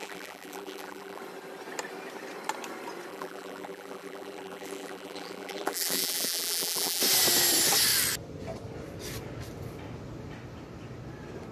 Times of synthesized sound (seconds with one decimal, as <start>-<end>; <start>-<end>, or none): 0.0-1.2; 3.1-7.0